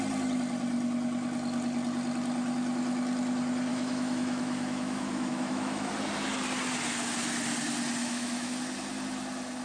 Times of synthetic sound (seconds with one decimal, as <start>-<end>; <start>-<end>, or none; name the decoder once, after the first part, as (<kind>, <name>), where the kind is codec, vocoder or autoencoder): 3.7-5.9 (autoencoder, DAC-VAE); 8.0-8.5